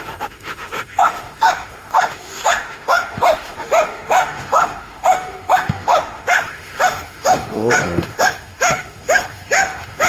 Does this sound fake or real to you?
fake